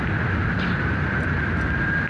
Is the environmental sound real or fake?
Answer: real